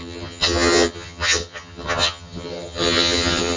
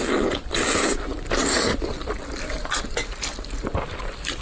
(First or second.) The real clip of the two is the second